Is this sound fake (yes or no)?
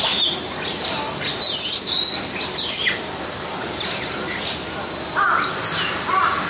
no